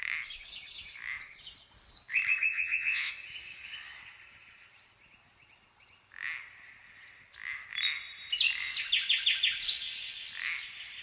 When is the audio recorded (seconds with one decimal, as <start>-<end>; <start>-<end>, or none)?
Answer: 0.0-2.5; 3.1-11.0